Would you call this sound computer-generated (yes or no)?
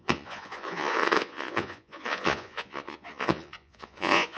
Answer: yes